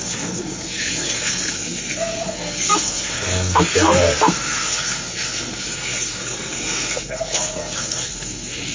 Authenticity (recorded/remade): remade